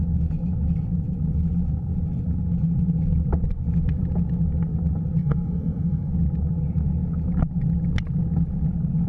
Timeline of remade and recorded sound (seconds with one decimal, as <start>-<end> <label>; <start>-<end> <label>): 0.0-5.2 recorded; 5.2-6.1 remade; 6.1-9.1 recorded

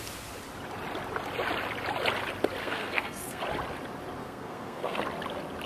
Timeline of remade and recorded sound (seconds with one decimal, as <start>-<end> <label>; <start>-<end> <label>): 0.0-2.6 recorded; 2.6-3.4 remade; 3.4-4.2 recorded; 4.2-5.0 remade; 5.0-5.7 recorded

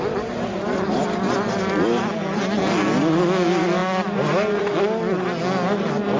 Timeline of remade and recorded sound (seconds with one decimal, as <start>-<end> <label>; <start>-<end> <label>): 0.0-6.2 recorded

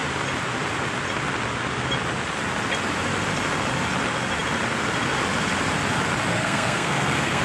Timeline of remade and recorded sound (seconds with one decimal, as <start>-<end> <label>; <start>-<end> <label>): 0.0-6.3 recorded; 6.3-7.4 remade

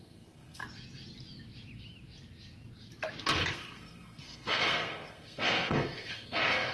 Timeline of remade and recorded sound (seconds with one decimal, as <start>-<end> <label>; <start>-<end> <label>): 0.0-0.6 remade; 0.6-3.5 recorded; 3.5-6.7 remade

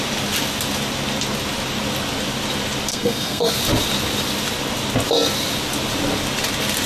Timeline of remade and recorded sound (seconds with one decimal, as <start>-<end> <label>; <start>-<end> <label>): 0.0-2.9 recorded; 2.9-3.5 remade; 3.5-6.9 recorded

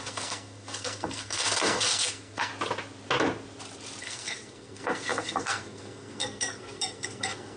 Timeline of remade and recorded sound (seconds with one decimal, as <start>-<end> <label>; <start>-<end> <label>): 0.0-2.5 remade; 2.5-4.0 recorded; 4.0-7.6 remade